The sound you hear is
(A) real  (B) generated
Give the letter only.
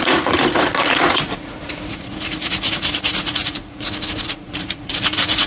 B